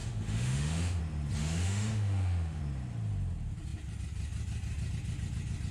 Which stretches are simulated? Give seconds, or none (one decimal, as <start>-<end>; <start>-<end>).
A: 0.0-1.0; 1.4-2.6

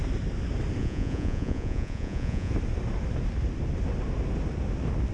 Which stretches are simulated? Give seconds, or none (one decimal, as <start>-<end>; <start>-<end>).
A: 0.8-2.5

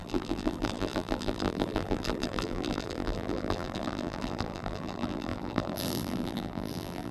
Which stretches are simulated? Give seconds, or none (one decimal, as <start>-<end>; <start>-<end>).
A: 0.0-7.1

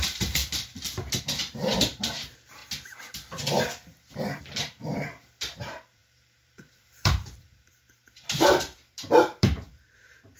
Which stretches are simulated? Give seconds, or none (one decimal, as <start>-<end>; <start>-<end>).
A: 0.0-0.4; 1.2-2.6; 4.4-10.4